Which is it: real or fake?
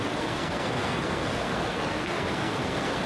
fake